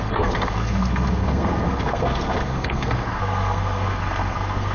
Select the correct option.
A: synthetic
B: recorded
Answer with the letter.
A